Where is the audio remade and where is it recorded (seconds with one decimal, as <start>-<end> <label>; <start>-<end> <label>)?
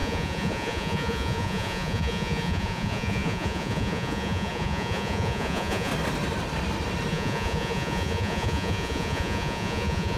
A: 0.0-5.9 remade; 5.9-7.1 recorded; 7.1-10.2 remade